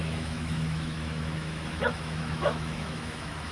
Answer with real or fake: fake